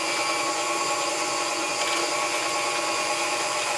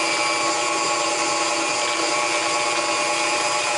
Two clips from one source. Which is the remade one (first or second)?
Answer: first